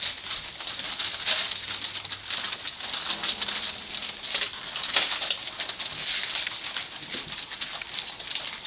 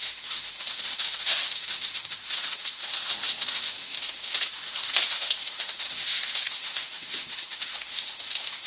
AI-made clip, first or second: second